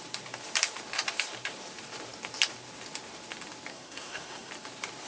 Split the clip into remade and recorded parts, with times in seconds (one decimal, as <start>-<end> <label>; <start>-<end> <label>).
0.0-3.7 recorded; 3.7-4.5 remade; 4.5-5.1 recorded